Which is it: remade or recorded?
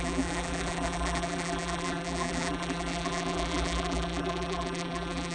remade